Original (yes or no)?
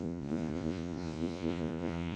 no